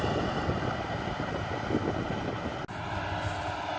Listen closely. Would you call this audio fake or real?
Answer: real